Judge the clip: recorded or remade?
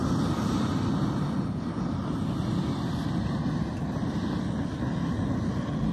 recorded